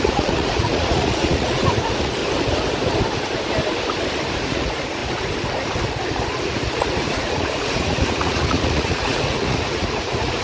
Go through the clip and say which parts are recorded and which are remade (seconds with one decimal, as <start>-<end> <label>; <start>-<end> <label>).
0.0-2.2 remade; 2.2-4.4 recorded; 4.4-5.0 remade; 5.0-6.4 recorded; 6.4-10.4 remade